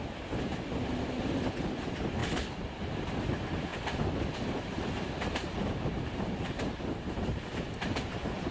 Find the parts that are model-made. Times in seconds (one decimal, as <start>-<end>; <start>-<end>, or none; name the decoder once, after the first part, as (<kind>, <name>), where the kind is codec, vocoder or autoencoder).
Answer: 3.7-8.1 (vocoder, BigVGAN v2)

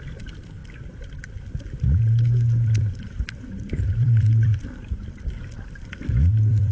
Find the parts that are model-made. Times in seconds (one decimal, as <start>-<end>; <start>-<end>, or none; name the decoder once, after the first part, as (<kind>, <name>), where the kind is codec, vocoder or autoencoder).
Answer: 0.0-0.6 (vocoder, BigVGAN v2); 2.0-6.7

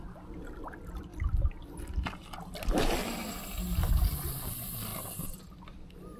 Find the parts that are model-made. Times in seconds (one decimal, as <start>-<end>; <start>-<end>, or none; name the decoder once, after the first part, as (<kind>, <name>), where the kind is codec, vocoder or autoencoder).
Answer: 0.0-1.1 (vocoder, BigVGAN v2); 4.4-6.2

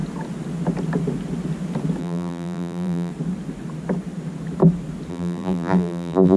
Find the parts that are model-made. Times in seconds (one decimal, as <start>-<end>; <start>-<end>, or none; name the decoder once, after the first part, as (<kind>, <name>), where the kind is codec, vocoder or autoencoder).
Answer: 2.0-3.1 (vocoder, BigVGAN v2); 5.1-6.4